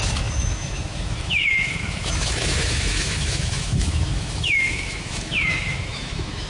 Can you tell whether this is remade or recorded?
remade